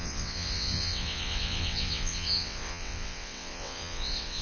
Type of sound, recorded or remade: remade